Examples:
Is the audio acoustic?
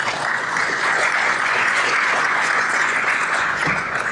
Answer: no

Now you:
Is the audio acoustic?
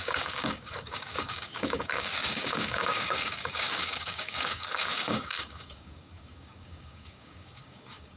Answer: no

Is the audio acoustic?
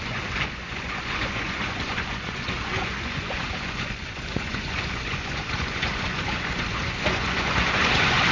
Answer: no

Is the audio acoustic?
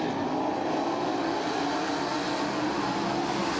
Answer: yes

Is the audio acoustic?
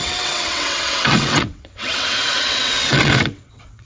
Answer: no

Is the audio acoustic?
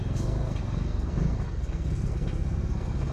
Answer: no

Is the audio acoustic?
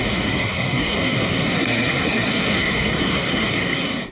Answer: no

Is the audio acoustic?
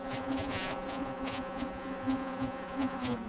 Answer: no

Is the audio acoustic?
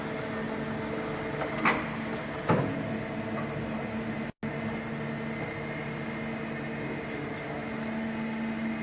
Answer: yes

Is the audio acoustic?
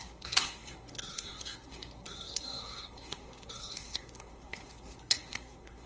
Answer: no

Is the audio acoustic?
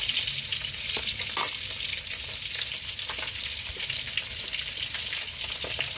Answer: yes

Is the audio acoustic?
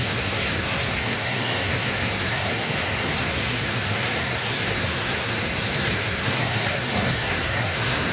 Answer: no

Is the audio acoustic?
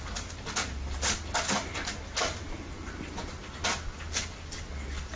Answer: yes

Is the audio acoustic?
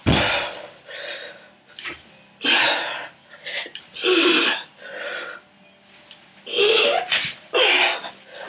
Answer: yes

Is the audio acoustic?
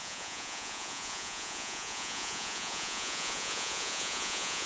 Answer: no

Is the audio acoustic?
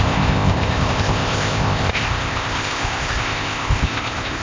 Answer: no